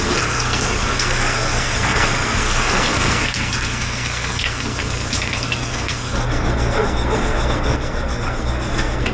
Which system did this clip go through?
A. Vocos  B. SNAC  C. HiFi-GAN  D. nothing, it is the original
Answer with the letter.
B